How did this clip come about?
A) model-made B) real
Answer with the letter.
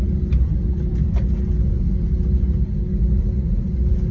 B